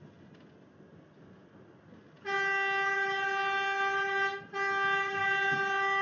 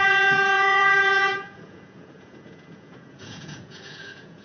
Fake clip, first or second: second